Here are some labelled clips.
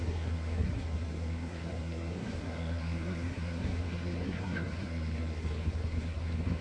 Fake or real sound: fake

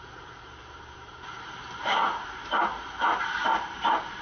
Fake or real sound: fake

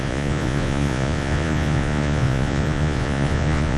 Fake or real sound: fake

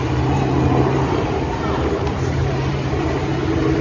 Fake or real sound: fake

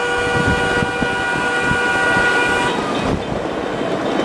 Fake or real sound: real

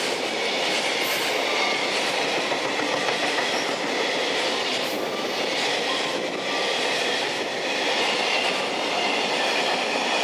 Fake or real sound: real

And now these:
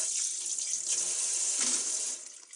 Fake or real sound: real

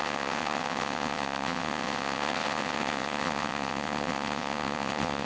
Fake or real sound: fake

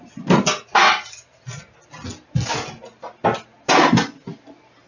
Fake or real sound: real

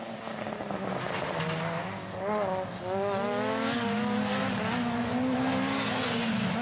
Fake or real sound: real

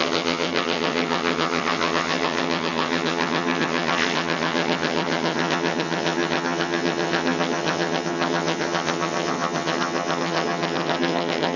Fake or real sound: fake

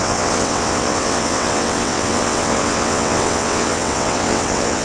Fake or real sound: fake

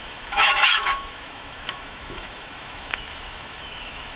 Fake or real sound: fake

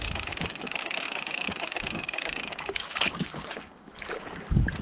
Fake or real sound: fake